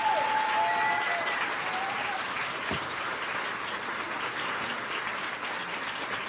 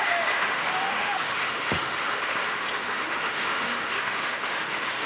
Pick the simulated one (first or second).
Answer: second